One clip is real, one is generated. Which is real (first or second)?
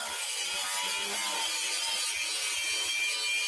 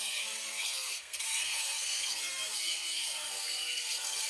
first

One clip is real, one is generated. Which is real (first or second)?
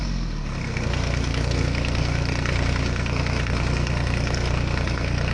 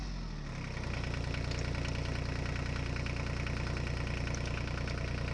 second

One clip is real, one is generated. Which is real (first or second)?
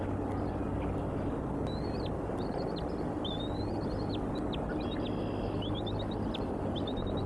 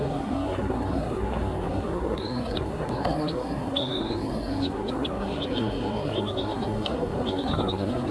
first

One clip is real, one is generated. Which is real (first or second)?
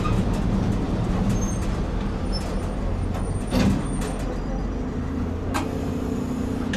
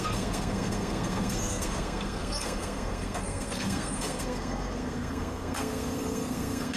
first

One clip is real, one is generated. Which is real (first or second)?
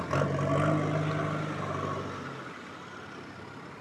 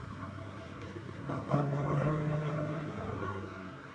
first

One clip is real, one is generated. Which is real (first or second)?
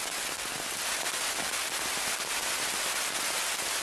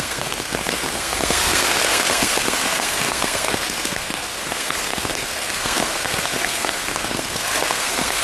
first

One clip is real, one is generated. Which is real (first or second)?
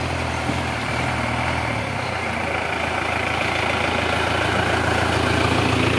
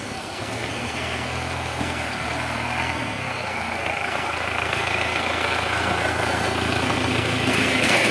first